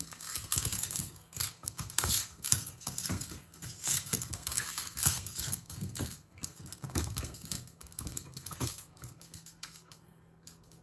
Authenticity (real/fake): fake